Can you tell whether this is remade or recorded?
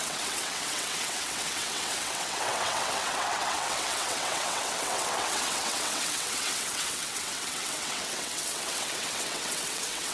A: remade